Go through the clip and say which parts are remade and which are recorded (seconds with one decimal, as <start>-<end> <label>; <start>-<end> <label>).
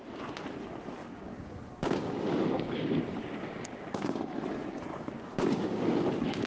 0.0-1.0 recorded; 1.0-4.4 remade; 4.4-4.9 recorded; 4.9-6.0 remade; 6.0-6.5 recorded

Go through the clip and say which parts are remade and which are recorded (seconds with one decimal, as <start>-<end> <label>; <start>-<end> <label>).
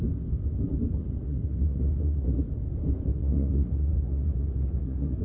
0.0-1.0 recorded; 1.0-2.4 remade; 2.4-3.1 recorded; 3.1-5.2 remade